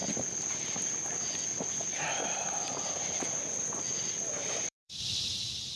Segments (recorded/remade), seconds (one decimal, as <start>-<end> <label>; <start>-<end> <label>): 0.0-4.4 recorded; 4.4-5.0 remade; 5.0-5.8 recorded